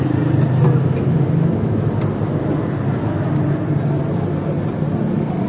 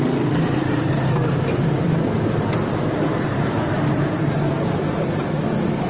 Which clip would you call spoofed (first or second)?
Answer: second